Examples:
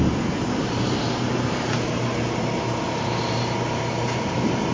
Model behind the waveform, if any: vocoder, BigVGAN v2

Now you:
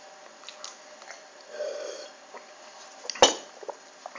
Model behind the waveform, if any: none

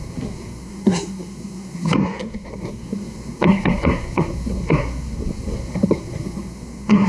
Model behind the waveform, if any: codec, SNAC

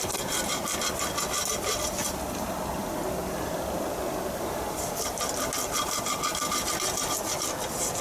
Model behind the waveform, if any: none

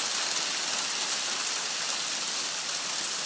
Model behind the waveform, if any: none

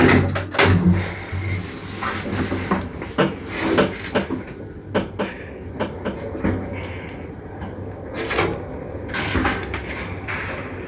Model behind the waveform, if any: none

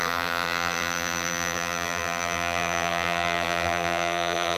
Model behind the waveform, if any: vocoder, BigVGAN v2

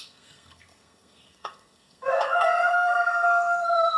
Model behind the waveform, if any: codec, SNAC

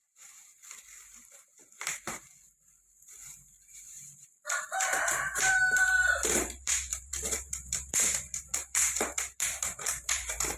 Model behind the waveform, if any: vocoder, BigVGAN v2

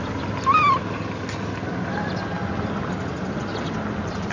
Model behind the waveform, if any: none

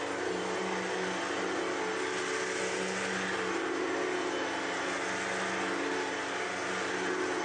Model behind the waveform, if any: none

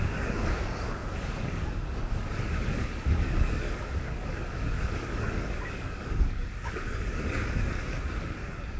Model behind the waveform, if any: codec, DAC